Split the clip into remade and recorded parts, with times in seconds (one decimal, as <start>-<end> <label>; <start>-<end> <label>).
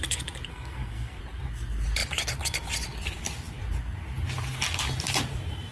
0.0-0.5 recorded; 0.5-1.2 remade; 1.2-5.7 recorded